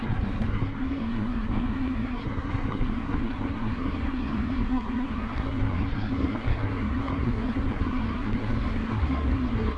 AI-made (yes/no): yes